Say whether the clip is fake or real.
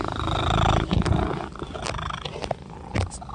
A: real